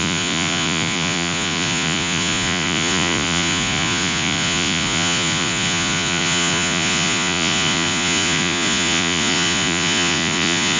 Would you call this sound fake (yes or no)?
yes